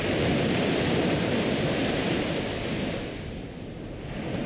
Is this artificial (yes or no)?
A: no